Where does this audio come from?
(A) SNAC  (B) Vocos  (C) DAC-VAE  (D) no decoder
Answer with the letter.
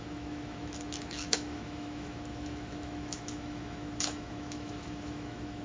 C